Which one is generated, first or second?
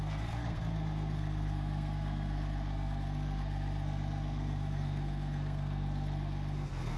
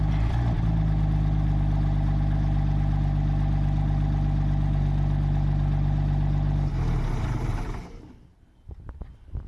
first